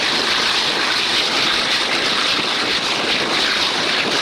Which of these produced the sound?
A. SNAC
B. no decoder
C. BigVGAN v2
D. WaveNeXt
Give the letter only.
C